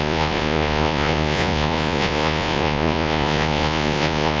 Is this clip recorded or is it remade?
remade